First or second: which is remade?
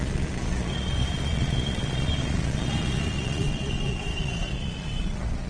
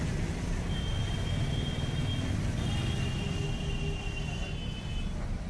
first